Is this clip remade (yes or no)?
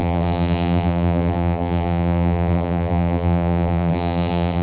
yes